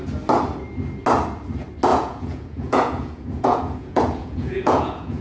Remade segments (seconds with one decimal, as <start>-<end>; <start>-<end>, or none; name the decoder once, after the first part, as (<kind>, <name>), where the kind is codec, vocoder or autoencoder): 1.9-5.2 (vocoder, Vocos)